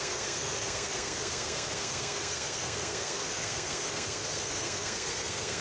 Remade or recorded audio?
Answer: remade